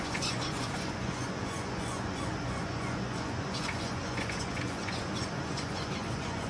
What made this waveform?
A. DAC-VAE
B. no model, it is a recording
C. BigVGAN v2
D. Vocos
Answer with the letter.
D